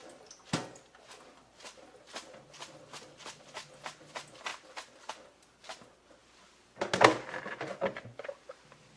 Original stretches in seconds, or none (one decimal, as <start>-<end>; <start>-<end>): 0.0-9.0